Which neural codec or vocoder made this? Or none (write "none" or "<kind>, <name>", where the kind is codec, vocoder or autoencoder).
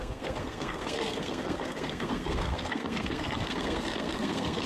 codec, SNAC